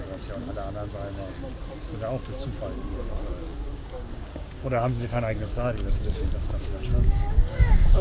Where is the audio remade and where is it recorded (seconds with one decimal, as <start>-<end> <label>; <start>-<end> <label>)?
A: 0.0-2.9 recorded; 2.9-8.0 remade